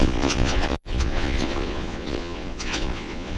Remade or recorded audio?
remade